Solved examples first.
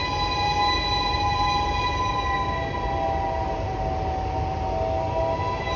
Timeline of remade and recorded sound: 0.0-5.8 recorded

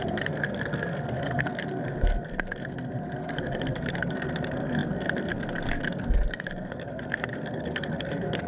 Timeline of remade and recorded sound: 0.0-8.5 remade

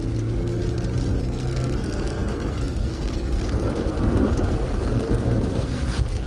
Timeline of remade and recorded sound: 0.0-0.6 remade; 0.6-1.2 recorded; 1.2-6.3 remade

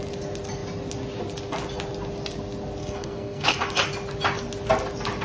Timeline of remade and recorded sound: 0.0-2.8 recorded; 2.8-3.6 remade; 3.6-5.2 recorded